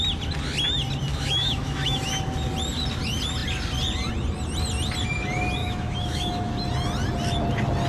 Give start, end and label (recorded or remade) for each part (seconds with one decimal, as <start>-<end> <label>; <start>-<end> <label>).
0.0-1.1 recorded; 1.1-2.2 remade; 2.2-5.6 recorded; 5.6-6.5 remade; 6.5-7.9 recorded